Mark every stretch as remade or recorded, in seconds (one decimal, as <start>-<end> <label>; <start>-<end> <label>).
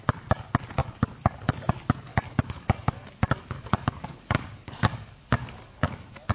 0.0-0.8 recorded; 0.8-1.7 remade; 1.7-2.1 recorded; 2.1-6.3 remade